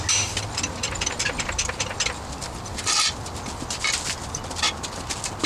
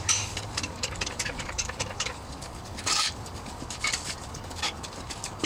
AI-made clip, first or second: second